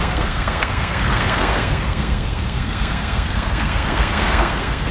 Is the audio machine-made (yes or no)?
yes